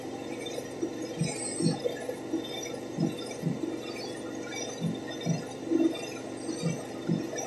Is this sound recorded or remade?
recorded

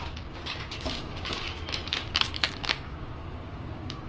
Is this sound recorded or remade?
remade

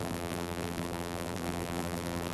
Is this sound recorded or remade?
remade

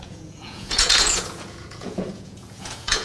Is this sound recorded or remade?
remade